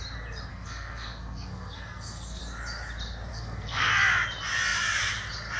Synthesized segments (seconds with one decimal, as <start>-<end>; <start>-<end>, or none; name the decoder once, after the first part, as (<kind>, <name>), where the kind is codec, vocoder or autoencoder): 0.5-2.4 (codec, SNAC); 3.3-3.9